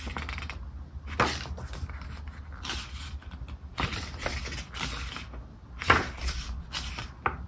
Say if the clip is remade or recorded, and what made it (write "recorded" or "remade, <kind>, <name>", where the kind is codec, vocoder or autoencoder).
recorded